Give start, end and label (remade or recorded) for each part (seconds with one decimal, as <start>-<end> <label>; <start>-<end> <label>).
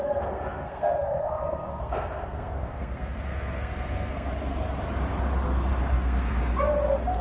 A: 0.0-4.3 remade; 4.3-5.9 recorded; 5.9-6.5 remade; 6.5-7.2 recorded